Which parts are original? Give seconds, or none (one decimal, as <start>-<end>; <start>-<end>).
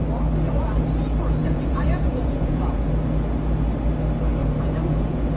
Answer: 0.0-1.4; 2.9-4.4